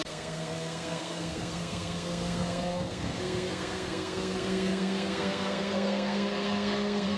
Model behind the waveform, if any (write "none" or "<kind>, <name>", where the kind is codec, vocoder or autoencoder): codec, SNAC